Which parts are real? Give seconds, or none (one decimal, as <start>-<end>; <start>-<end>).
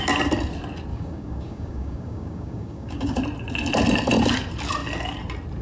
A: 0.0-0.9; 3.2-5.6